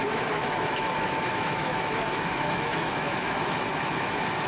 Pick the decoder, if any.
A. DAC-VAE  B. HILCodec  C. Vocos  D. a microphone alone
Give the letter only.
A